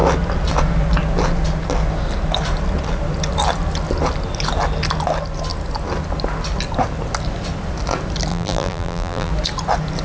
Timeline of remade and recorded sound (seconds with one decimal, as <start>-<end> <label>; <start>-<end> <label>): 0.0-8.3 recorded; 8.3-9.3 remade; 9.3-10.0 recorded